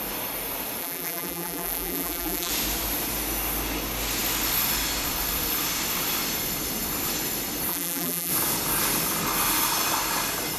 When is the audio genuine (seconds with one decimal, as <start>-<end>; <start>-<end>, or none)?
0.0-0.8; 2.5-7.7; 8.3-10.6